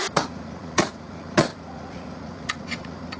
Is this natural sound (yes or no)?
no